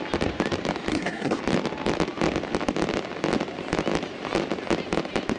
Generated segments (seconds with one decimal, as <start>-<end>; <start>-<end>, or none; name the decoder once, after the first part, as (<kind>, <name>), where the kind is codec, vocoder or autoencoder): 0.9-1.4 (codec, SNAC)